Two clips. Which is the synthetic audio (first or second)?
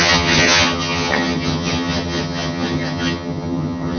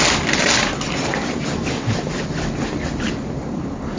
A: first